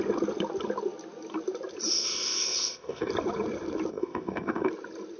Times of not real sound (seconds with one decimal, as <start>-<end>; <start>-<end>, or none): 1.9-3.1; 3.9-4.7